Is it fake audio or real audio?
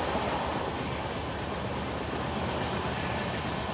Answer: real